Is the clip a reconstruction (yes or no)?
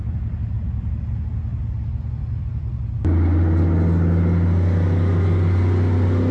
no